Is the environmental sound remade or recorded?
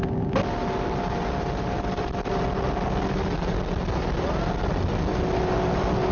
recorded